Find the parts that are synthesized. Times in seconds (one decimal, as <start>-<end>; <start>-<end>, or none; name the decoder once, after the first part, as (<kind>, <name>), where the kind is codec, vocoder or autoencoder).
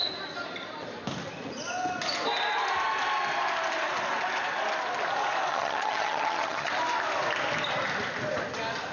5.5-6.7 (vocoder, HiFi-GAN)